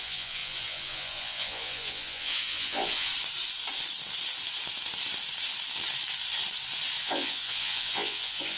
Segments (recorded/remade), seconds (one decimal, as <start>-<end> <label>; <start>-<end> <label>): 0.0-3.1 remade; 3.1-7.0 recorded; 7.0-8.6 remade